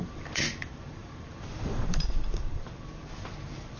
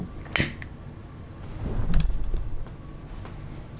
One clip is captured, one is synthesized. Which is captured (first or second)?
second